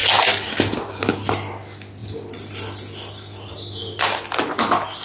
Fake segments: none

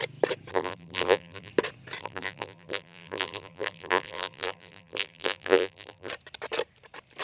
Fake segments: 0.5-1.5 (vocoder, BigVGAN v2); 2.0-6.1

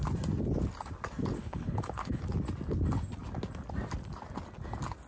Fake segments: 1.4-2.2 (codec, HILCodec)

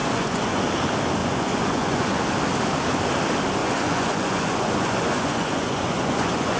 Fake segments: 0.0-0.6 (vocoder, Vocos); 1.2-2.2; 3.6-6.6